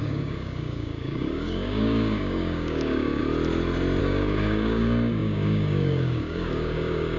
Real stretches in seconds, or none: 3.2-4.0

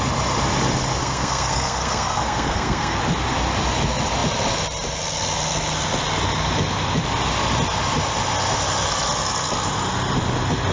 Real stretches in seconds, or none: 0.0-1.0; 3.0-10.7

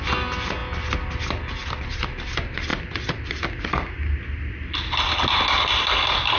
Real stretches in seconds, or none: 0.0-6.4

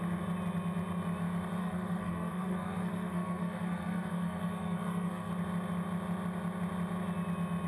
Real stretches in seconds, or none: 0.0-1.6; 5.3-7.7

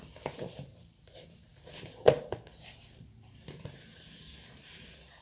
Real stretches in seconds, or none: none

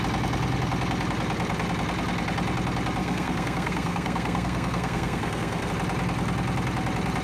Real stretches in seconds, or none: 0.0-3.0; 5.7-7.2

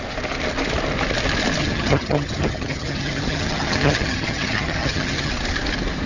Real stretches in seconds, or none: 0.0-1.6; 5.3-6.1